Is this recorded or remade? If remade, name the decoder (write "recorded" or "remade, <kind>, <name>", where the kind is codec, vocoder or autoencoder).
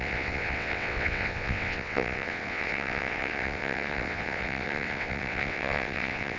remade, vocoder, WaveNeXt